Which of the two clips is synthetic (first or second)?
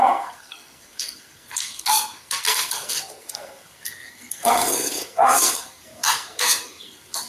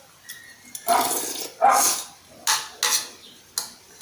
first